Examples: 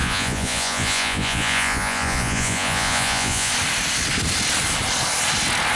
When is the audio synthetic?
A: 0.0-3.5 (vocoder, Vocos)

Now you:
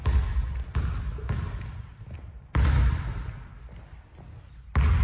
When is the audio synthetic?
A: 2.2-3.5 (vocoder, BigVGAN v2)

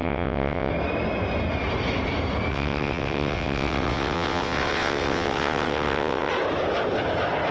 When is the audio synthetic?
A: 0.0-0.7 (vocoder, WaveNeXt); 2.5-6.3

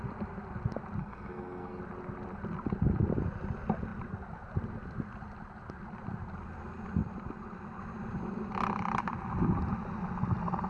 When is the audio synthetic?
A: 1.0-1.8 (codec, SNAC)

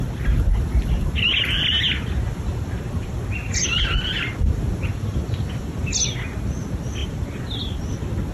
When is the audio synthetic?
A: 1.3-5.9 (vocoder, BigVGAN v2); 7.0-7.8

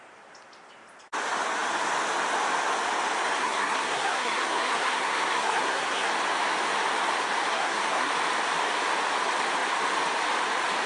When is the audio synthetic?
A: 3.4-6.1 (codec, SNAC); 7.5-8.1

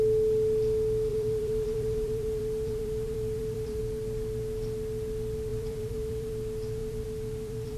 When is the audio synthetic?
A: 1.1-3.8 (vocoder, BigVGAN v2); 5.5-6.3; 6.8-7.8